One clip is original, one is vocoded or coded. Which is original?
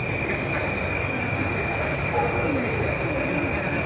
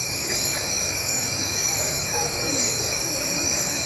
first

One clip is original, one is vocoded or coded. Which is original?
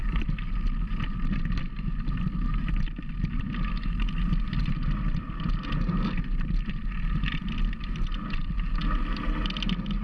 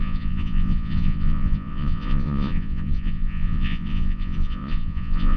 first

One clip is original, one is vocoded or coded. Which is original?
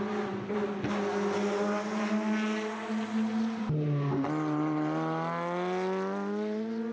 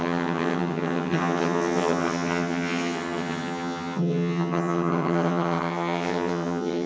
first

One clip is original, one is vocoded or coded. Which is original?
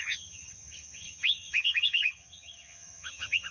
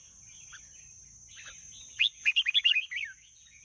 second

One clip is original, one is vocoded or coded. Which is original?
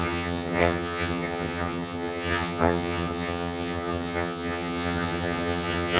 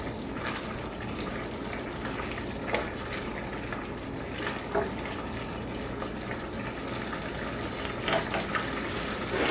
second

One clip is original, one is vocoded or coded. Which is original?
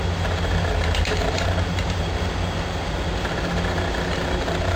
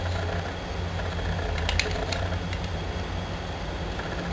second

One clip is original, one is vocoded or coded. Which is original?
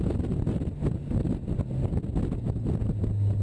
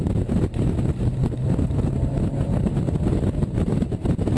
first